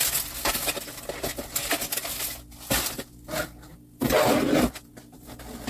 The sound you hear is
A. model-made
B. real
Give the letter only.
B